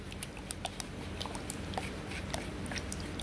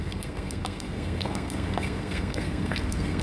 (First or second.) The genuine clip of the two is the first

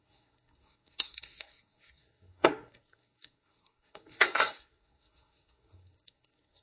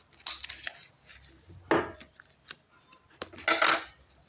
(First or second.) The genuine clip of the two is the second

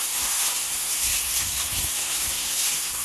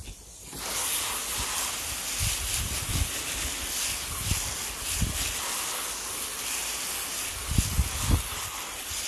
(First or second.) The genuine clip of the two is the second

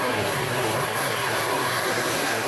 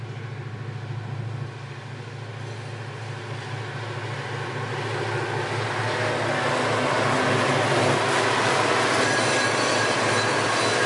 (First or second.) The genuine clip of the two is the second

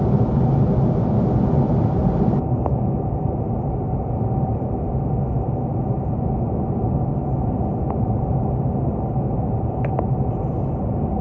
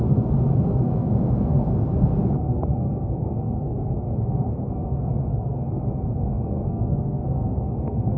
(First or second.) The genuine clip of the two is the first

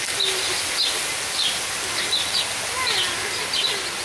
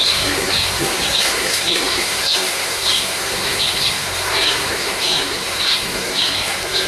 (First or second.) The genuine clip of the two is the first